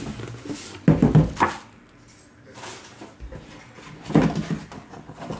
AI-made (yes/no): no